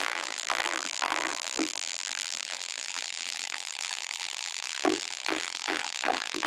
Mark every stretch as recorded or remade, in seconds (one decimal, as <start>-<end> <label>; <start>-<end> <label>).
0.0-6.5 remade